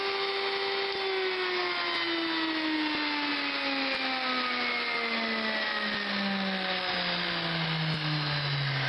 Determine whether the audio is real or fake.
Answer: real